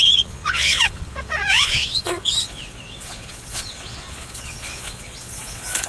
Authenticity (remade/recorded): remade